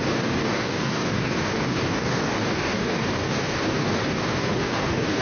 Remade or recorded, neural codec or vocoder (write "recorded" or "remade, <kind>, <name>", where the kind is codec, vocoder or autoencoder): remade, codec, DAC